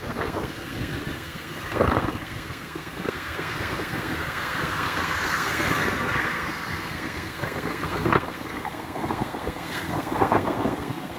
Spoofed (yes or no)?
yes